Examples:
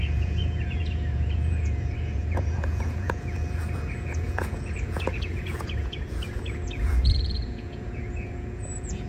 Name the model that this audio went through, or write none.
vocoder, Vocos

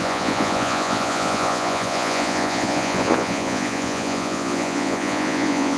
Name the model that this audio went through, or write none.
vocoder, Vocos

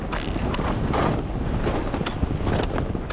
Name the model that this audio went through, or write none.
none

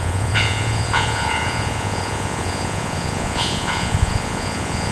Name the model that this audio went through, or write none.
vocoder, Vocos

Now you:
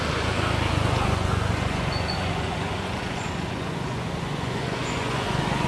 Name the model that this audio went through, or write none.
vocoder, Vocos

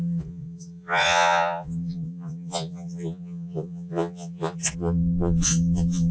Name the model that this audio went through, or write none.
vocoder, Vocos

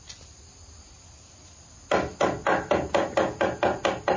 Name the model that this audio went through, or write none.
none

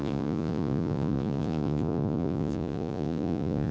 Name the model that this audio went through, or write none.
vocoder, Vocos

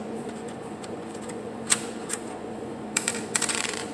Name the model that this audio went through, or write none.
vocoder, Vocos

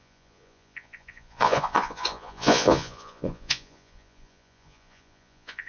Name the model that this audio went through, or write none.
vocoder, Vocos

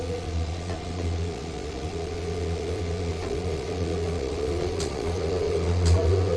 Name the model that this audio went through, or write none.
vocoder, Vocos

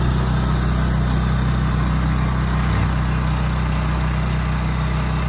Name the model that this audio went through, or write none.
none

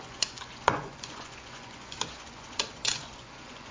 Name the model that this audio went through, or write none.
vocoder, Vocos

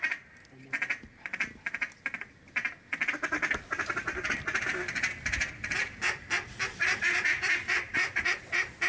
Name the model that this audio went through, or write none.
none